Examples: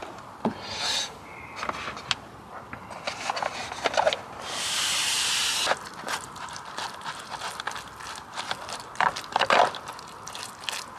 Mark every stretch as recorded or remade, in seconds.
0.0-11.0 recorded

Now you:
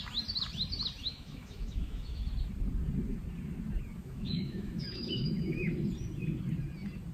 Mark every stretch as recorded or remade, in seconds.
0.0-1.0 recorded; 1.0-2.3 remade; 2.3-4.0 recorded; 4.0-5.7 remade; 5.7-7.1 recorded